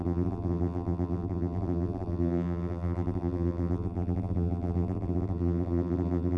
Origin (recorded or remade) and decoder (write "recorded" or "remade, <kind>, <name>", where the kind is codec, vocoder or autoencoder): remade, vocoder, BigVGAN v2